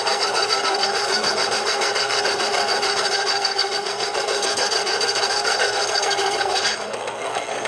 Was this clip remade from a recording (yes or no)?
yes